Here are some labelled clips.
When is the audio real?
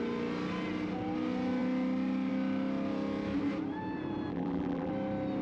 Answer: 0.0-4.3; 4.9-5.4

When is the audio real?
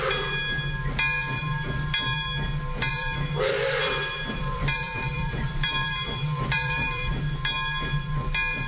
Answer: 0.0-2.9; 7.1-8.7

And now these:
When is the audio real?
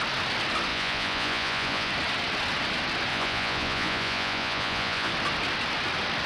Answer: 0.0-0.7; 1.9-3.1; 5.1-6.3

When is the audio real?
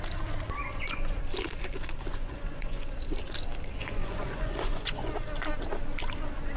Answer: 0.0-0.6; 1.2-2.1; 2.8-3.8; 5.1-6.6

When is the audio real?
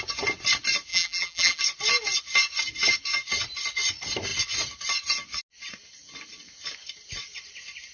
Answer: 0.0-0.9; 1.6-7.9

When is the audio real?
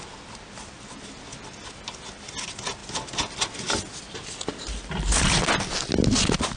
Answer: 0.0-6.6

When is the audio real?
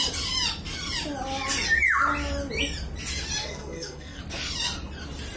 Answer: 0.0-3.4; 4.2-5.4